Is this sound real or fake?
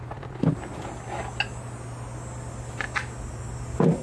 real